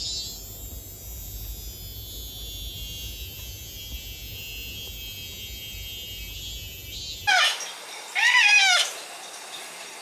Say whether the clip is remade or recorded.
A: recorded